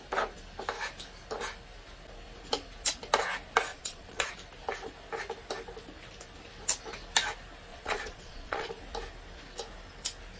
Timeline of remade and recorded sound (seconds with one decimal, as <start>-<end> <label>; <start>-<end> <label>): 0.0-3.7 recorded; 3.7-4.3 remade; 4.3-7.7 recorded; 7.7-8.7 remade; 8.7-10.4 recorded